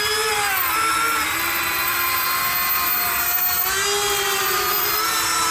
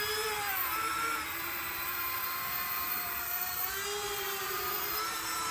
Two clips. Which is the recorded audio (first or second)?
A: first